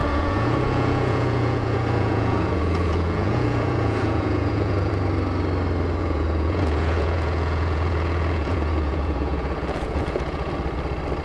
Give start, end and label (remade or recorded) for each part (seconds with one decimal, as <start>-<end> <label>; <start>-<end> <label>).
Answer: 0.0-4.9 remade; 4.9-6.0 recorded; 6.0-10.5 remade; 10.5-11.2 recorded

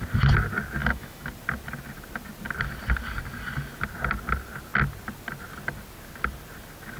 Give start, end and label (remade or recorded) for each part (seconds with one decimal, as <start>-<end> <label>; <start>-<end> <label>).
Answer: 0.0-0.8 recorded; 0.8-1.3 remade; 1.3-7.0 recorded

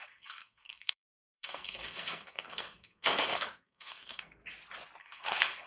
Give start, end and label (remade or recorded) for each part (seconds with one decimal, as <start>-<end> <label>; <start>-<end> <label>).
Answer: 0.0-4.4 remade; 4.4-5.0 recorded; 5.0-5.7 remade